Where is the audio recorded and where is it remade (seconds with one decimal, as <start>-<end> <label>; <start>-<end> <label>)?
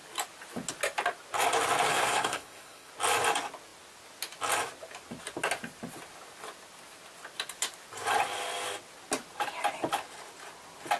0.0-1.9 recorded; 1.9-2.9 remade; 2.9-11.0 recorded